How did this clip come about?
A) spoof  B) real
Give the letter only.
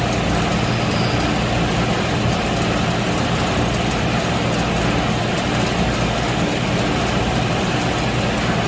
B